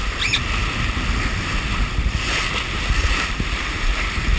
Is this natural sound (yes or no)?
yes